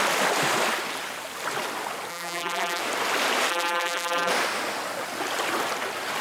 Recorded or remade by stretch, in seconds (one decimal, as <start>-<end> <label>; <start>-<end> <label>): 0.0-2.1 recorded; 2.1-2.8 remade; 2.8-3.5 recorded; 3.5-4.3 remade; 4.3-6.2 recorded